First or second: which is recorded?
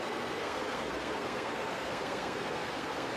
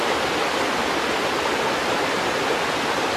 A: second